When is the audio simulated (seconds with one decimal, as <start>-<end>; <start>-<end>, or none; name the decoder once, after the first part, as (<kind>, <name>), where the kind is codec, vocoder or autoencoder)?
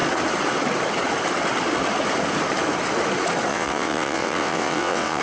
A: 3.5-5.2 (vocoder, WaveNeXt)